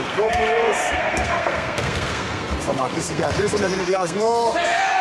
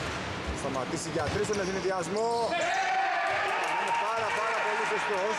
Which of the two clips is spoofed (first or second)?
first